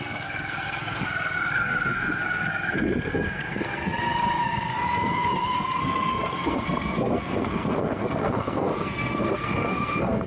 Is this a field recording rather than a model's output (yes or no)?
no